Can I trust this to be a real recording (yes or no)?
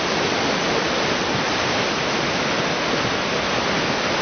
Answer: yes